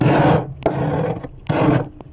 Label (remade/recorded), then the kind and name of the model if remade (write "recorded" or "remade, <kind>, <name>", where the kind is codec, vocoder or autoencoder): recorded